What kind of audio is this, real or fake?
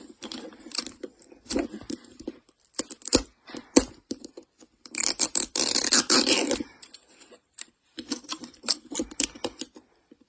fake